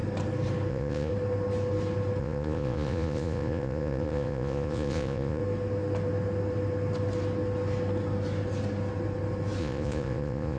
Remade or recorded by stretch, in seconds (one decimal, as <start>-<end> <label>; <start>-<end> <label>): 0.0-0.7 recorded; 0.7-1.1 remade; 1.1-2.2 recorded; 2.2-5.4 remade; 5.4-9.6 recorded; 9.6-10.6 remade